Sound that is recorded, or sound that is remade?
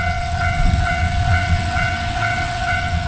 remade